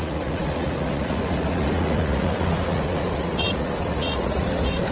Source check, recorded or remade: remade